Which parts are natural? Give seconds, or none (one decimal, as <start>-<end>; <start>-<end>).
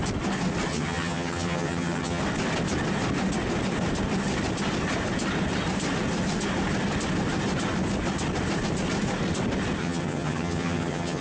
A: 0.0-0.7; 2.2-9.8